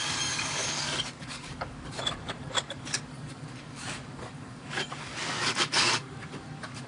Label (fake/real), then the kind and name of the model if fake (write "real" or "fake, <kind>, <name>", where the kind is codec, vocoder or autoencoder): fake, codec, DAC